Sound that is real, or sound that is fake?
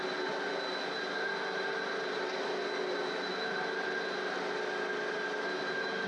real